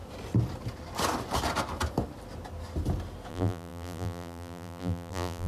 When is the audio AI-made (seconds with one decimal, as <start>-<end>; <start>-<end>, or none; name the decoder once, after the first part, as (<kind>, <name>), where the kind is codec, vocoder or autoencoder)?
3.3-5.5 (vocoder, BigVGAN v2)